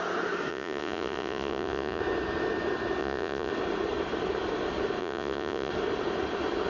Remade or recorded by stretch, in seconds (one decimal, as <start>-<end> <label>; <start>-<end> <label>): 0.0-0.5 recorded; 0.5-2.0 remade; 2.0-3.0 recorded; 3.0-3.5 remade; 3.5-5.0 recorded; 5.0-5.7 remade; 5.7-6.7 recorded